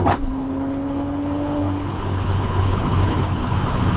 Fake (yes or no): yes